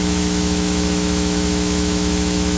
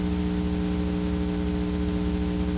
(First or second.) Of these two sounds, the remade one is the first